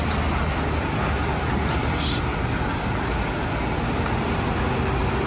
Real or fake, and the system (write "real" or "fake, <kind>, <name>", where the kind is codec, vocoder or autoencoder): real